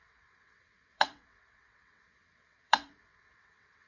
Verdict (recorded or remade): remade